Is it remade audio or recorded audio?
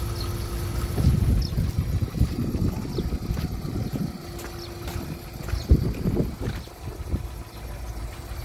recorded